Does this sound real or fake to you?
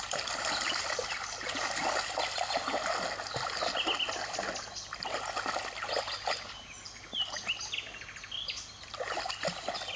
real